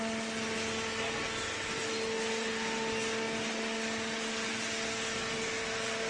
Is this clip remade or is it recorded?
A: recorded